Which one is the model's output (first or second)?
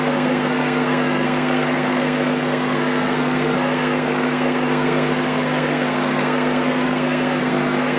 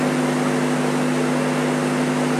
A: first